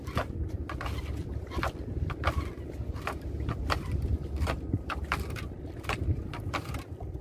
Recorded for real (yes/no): yes